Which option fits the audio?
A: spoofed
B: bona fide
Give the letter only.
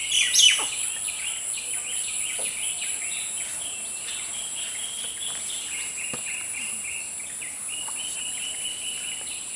B